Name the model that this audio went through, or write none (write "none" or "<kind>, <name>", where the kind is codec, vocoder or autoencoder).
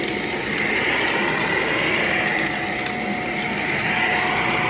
none